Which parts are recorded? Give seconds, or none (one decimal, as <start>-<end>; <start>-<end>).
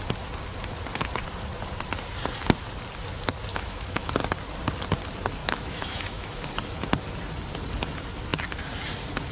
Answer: 0.0-3.5; 4.1-5.4; 6.5-9.3